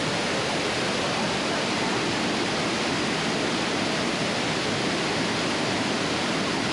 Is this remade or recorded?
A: recorded